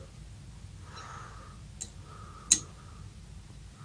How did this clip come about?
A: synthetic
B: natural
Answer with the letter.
B